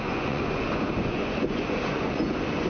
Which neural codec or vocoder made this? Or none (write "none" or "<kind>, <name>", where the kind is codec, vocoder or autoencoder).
vocoder, Vocos